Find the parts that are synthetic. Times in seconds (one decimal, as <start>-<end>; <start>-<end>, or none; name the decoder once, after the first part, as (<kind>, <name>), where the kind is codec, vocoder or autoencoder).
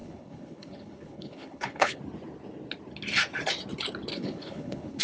0.0-2.0 (codec, HILCodec); 4.1-5.0